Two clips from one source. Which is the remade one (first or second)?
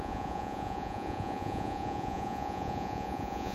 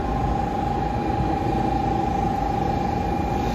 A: first